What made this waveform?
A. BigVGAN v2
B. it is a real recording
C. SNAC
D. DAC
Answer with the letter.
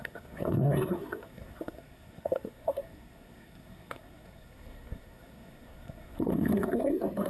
C